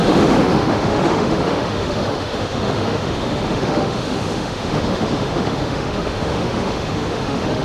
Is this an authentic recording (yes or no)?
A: no